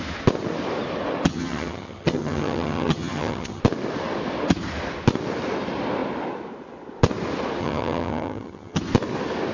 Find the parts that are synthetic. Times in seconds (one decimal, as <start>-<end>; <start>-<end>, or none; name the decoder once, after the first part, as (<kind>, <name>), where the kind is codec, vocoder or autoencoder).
1.3-3.6 (vocoder, HiFi-GAN); 7.6-8.8